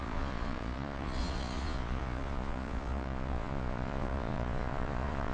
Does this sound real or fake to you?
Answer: fake